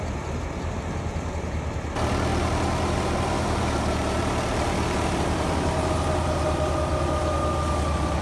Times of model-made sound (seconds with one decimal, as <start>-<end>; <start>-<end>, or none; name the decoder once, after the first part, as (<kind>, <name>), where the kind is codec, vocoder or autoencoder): 2.3-5.5 (vocoder, BigVGAN v2)

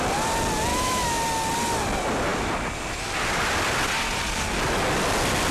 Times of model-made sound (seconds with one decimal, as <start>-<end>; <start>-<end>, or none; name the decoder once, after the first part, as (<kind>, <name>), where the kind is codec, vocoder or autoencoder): 0.7-1.2 (autoencoder, DAC-VAE)

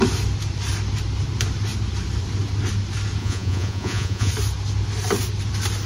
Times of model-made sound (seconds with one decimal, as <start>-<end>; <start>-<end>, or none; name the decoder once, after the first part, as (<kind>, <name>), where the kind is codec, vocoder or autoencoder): 3.2-4.3 (vocoder, Vocos)

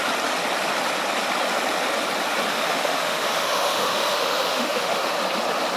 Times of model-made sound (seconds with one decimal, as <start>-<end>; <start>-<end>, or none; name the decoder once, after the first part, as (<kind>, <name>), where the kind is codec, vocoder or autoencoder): 2.5-5.2 (autoencoder, DAC-VAE)

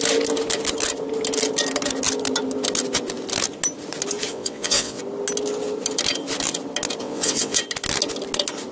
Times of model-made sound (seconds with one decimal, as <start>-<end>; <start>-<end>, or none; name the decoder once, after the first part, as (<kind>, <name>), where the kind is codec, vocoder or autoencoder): 4.3-5.0 (vocoder, WaveNeXt); 7.0-7.6